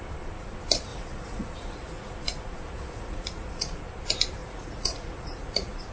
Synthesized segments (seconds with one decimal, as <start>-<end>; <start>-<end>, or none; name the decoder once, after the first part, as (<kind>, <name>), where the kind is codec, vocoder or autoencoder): 0.9-3.8 (vocoder, Vocos); 4.4-5.9

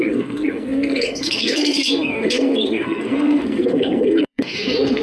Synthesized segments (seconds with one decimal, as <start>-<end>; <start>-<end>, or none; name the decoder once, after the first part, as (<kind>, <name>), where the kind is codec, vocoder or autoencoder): 0.0-5.0 (codec, SNAC)